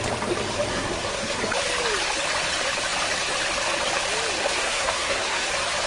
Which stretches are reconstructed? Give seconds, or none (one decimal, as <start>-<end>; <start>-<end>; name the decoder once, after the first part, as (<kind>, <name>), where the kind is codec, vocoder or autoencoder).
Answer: 0.7-1.4 (codec, SNAC); 4.4-5.5

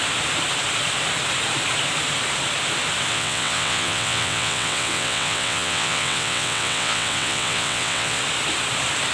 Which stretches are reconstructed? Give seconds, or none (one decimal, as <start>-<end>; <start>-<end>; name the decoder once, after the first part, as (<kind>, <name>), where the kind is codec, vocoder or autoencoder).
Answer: 3.1-8.2 (vocoder, WaveNeXt)

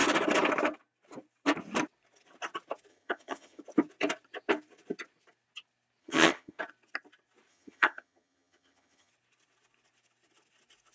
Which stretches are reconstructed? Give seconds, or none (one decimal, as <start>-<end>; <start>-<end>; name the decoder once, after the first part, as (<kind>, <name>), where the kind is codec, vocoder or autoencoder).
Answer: 2.9-3.6 (vocoder, HiFi-GAN); 6.0-6.6; 7.5-9.1

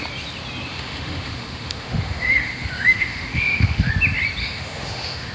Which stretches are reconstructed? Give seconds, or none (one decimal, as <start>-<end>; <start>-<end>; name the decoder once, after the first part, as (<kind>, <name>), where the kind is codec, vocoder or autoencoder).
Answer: 0.7-3.9 (autoencoder, DAC-VAE); 4.4-5.3

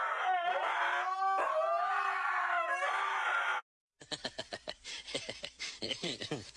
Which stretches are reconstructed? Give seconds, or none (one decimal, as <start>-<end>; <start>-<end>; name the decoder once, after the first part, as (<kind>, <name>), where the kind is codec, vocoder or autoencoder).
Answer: none

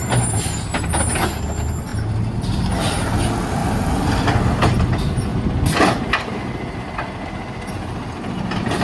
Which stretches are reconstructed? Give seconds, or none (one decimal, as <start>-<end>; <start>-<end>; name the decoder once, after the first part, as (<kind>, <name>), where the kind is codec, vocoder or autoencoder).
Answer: 3.6-4.2 (vocoder, BigVGAN v2)

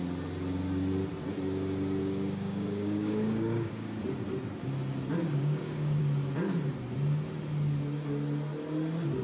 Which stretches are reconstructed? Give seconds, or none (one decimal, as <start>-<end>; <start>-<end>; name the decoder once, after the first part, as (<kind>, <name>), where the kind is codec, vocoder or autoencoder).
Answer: 2.0-4.0 (codec, DAC); 5.2-6.0